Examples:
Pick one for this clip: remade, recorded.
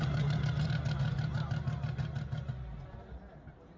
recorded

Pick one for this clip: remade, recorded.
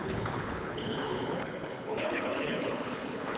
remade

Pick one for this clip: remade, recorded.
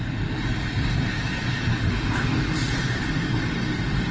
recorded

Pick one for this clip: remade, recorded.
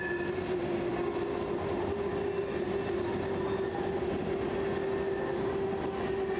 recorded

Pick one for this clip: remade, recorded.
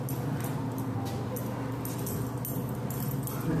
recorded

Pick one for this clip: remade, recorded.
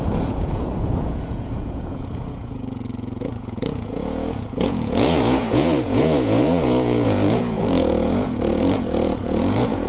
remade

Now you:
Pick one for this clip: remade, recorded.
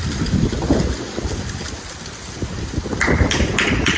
recorded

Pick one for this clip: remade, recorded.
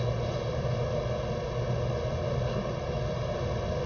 recorded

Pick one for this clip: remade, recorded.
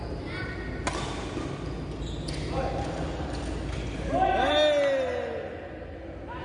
recorded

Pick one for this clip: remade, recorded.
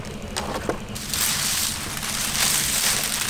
recorded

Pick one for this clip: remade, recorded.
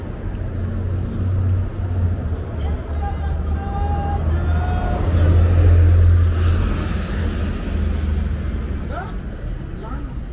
recorded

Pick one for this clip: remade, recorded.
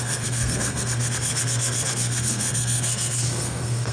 remade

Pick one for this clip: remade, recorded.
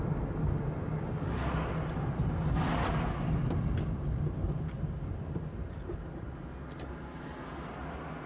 recorded